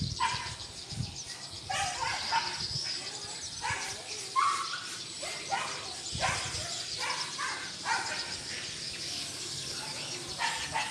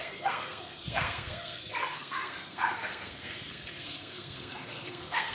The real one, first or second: first